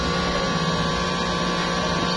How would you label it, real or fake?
real